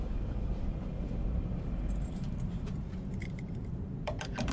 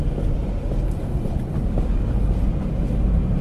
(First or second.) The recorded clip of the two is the second